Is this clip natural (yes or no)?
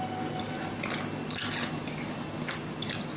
yes